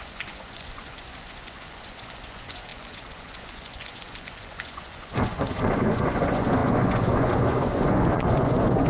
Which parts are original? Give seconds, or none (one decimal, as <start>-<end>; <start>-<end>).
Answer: none

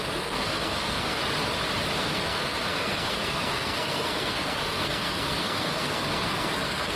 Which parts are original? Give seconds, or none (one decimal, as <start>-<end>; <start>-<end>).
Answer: 1.2-2.0

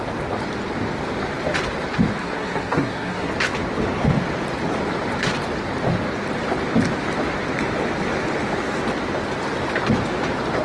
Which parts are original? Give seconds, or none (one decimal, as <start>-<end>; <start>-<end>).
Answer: 0.0-2.2; 3.3-10.6

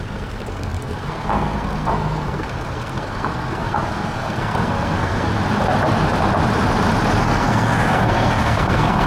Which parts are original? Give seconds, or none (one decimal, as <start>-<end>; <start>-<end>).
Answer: 5.3-7.2